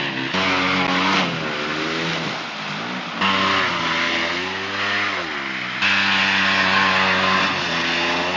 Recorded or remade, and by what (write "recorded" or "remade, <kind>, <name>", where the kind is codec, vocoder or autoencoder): recorded